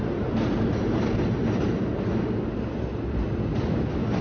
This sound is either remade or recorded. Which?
recorded